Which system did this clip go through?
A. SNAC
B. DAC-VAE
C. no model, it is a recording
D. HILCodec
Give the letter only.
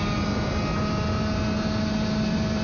C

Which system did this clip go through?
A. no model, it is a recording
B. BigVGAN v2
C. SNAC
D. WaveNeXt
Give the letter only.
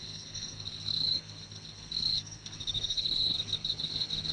C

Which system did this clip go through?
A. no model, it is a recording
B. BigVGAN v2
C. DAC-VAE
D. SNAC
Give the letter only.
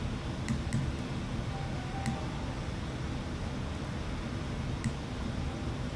A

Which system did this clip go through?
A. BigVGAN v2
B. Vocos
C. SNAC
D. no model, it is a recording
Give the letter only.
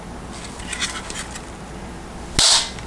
D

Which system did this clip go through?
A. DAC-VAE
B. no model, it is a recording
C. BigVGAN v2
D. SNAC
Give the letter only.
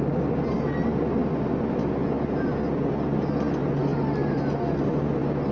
B